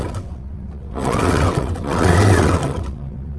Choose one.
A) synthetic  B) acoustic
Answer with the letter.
A